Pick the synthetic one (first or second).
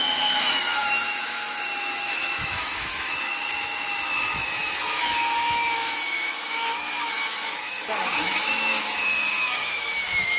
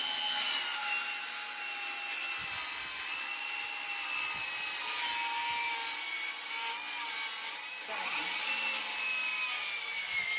first